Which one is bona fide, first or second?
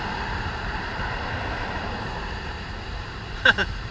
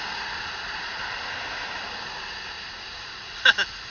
second